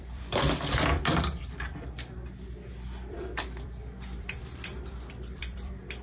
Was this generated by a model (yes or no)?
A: yes